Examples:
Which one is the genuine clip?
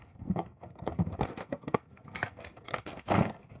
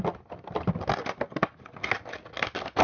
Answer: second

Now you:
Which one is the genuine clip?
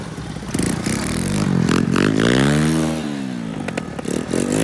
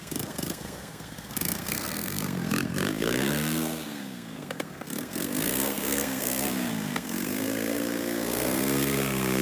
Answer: first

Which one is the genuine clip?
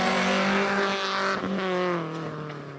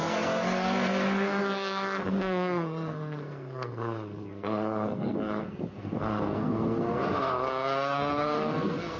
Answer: first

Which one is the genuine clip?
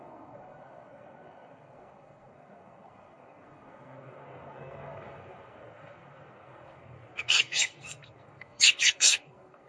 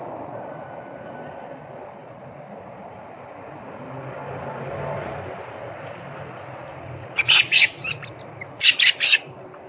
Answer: second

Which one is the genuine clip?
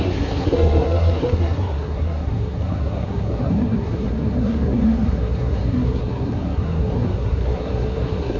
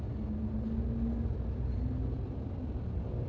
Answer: second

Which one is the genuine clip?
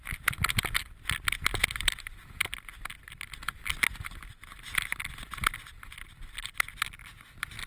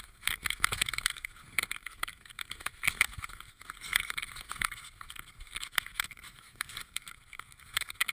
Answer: first